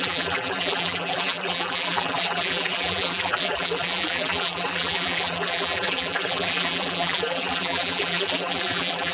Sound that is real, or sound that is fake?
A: fake